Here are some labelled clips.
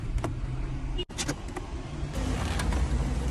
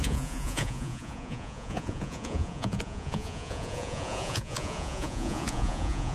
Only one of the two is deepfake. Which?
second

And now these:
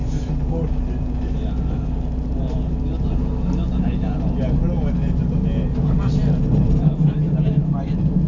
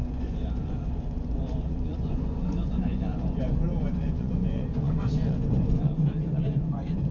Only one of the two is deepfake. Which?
second